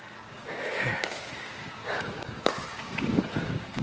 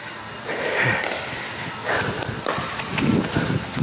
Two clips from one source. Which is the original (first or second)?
second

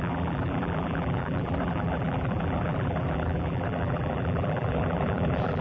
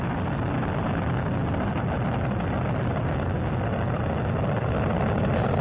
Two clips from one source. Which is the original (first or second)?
second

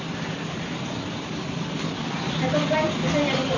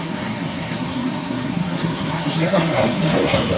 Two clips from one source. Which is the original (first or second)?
first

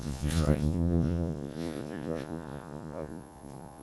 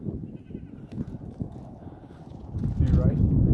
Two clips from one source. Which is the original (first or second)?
second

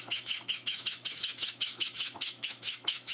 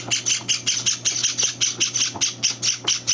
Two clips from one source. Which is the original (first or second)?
second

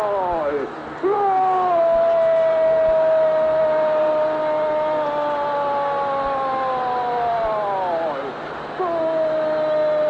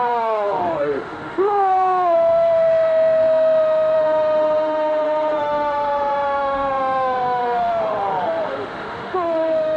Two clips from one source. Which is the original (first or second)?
first